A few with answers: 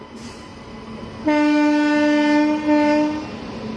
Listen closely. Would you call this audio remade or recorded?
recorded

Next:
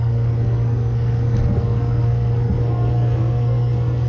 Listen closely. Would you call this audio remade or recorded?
remade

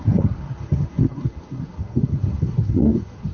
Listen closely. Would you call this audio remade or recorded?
remade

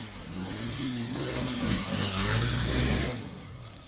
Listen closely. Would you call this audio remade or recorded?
remade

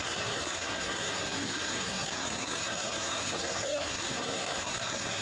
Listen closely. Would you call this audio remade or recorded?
remade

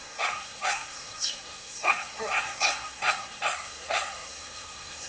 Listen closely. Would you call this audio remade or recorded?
remade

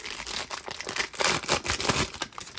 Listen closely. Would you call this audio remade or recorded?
recorded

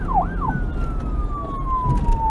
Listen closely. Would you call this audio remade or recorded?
recorded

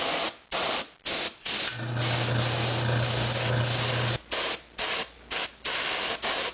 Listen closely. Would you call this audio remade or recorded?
recorded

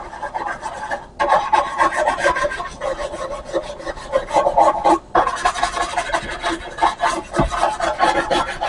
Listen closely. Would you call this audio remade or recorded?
recorded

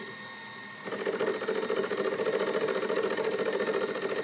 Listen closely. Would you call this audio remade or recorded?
recorded